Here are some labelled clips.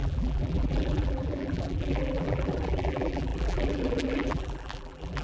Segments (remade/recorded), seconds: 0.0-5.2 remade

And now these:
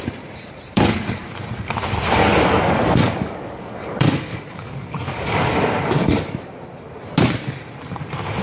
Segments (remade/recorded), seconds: 0.0-0.7 recorded; 0.7-1.3 remade; 1.3-2.2 recorded; 2.2-6.4 remade; 6.4-8.4 recorded

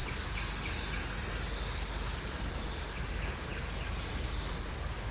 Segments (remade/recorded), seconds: 0.0-5.1 recorded

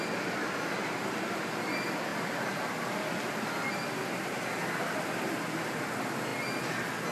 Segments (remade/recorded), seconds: 0.0-7.1 recorded

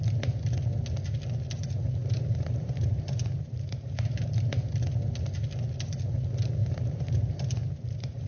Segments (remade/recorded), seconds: 0.0-2.0 recorded; 2.0-4.5 remade; 4.5-6.6 recorded; 6.6-8.3 remade

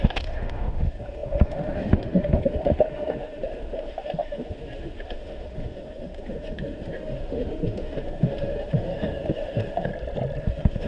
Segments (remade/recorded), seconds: 0.0-9.9 remade; 9.9-10.4 recorded; 10.4-10.9 remade